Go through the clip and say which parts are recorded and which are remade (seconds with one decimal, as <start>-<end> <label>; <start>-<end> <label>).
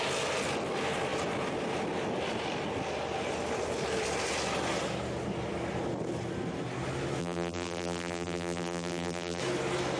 0.0-7.2 recorded; 7.2-9.4 remade; 9.4-10.0 recorded